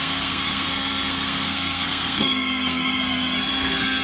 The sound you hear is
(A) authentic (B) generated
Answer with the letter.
B